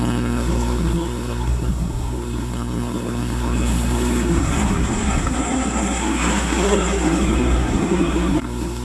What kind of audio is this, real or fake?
fake